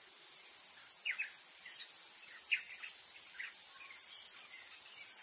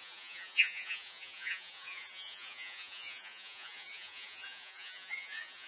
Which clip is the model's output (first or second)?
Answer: second